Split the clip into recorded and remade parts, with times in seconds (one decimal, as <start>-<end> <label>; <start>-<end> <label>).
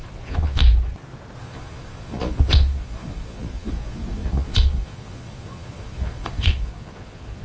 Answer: 0.0-0.6 remade; 0.6-1.4 recorded; 1.4-7.4 remade